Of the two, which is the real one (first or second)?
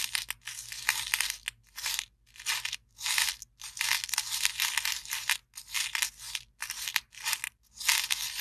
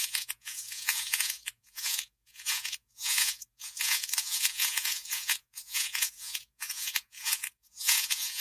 first